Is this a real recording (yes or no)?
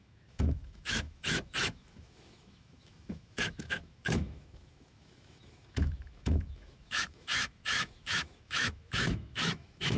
no